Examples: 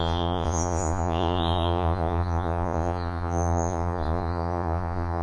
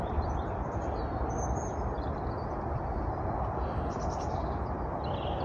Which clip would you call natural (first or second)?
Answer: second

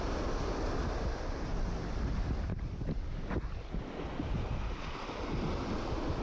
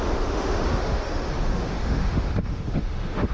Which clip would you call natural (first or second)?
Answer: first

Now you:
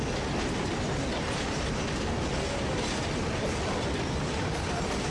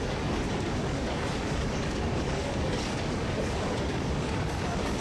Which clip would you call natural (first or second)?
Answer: first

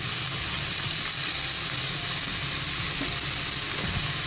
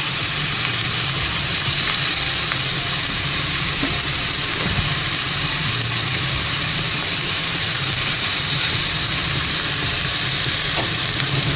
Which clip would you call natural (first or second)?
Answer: first